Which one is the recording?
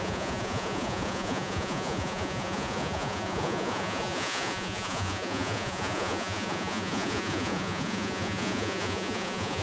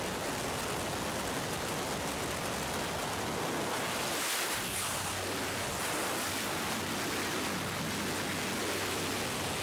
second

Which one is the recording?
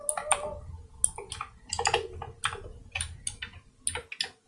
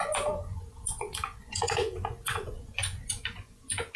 first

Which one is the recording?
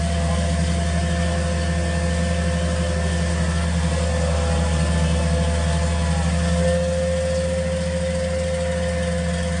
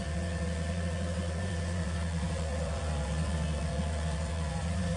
first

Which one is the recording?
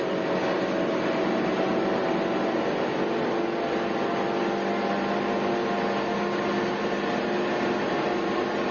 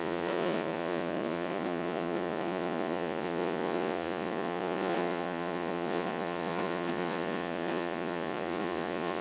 first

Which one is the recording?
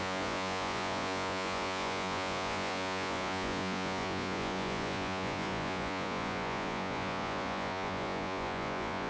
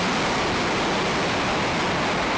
second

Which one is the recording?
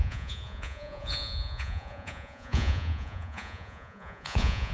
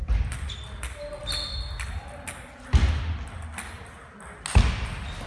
second